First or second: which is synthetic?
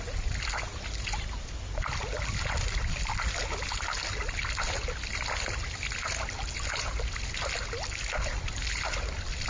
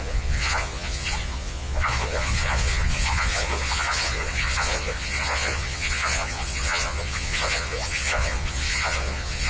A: second